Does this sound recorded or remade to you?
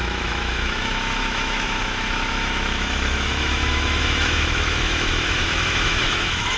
remade